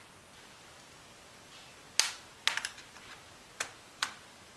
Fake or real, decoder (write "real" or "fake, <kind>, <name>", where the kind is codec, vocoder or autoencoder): real